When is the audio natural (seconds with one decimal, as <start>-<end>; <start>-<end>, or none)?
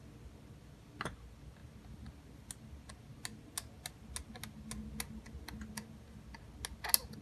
0.0-7.2